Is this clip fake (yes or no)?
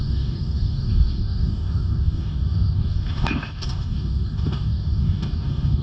yes